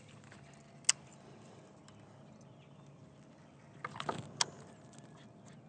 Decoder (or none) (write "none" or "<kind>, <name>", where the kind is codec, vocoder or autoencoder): none